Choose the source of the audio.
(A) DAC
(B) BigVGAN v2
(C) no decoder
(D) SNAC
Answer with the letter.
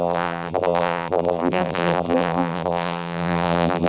B